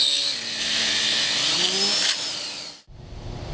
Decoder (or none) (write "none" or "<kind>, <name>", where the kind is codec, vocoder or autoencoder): none